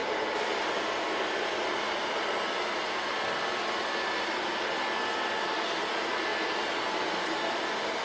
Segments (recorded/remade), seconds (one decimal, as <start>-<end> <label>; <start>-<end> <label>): 0.0-8.0 recorded